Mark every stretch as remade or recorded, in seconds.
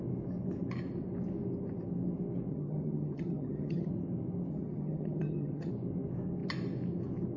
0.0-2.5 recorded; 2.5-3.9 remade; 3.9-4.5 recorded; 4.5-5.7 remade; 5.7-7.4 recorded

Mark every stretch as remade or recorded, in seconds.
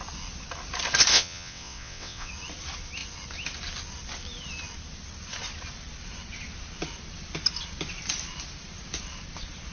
0.0-1.1 recorded; 1.1-2.3 remade; 2.3-9.7 recorded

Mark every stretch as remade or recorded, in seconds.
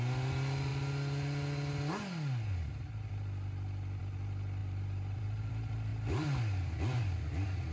0.0-4.6 recorded; 4.6-5.5 remade; 5.5-7.7 recorded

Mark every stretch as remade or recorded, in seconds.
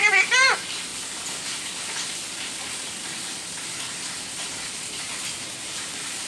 0.0-0.9 remade; 0.9-4.7 recorded; 4.7-6.3 remade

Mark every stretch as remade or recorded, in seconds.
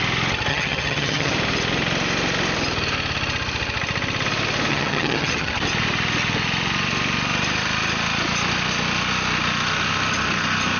0.0-0.5 recorded; 0.5-1.3 remade; 1.3-4.7 recorded; 4.7-5.5 remade; 5.5-10.8 recorded